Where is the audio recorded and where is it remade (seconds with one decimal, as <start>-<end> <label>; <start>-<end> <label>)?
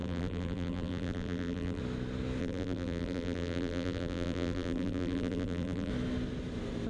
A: 0.0-1.8 remade; 1.8-2.4 recorded; 2.4-5.9 remade; 5.9-6.9 recorded